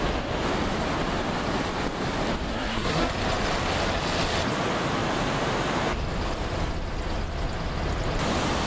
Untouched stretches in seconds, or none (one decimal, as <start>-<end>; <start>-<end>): 0.0-2.5; 3.1-8.7

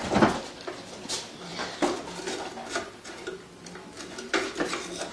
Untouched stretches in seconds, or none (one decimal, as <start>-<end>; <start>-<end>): 0.0-5.1

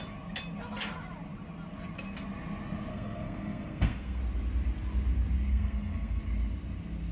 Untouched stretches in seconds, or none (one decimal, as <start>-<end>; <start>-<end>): 0.0-2.9; 4.2-5.5; 6.2-7.1